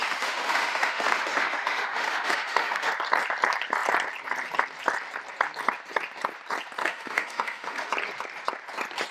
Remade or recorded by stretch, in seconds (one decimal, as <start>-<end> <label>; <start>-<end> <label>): 0.0-2.9 remade; 2.9-6.8 recorded; 6.8-7.9 remade; 7.9-9.1 recorded